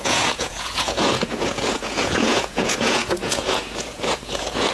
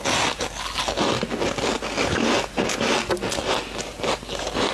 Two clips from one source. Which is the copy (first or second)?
first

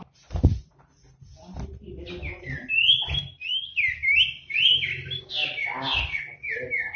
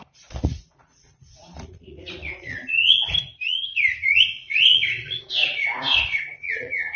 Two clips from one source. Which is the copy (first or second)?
second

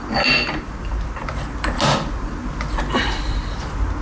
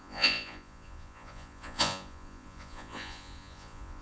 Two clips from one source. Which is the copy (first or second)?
second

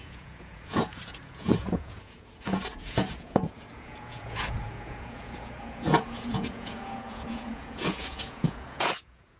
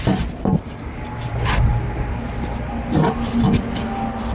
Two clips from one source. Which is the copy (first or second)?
first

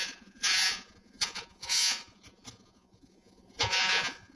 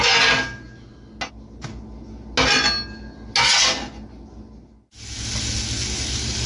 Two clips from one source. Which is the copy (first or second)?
first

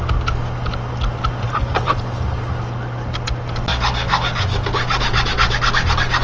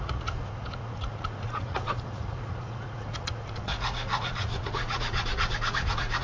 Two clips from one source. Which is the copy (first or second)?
second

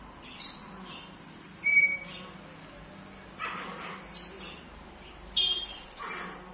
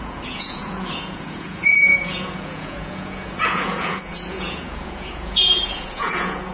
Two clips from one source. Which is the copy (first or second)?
second